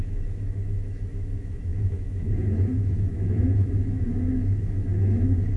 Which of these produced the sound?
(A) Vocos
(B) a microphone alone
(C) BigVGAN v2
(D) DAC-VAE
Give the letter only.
D